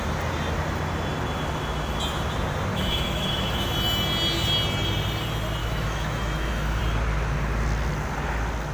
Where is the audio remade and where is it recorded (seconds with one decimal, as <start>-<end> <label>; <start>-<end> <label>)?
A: 0.0-2.7 recorded; 2.7-3.7 remade; 3.7-5.6 recorded; 5.6-6.8 remade; 6.8-8.7 recorded